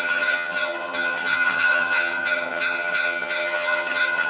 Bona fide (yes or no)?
no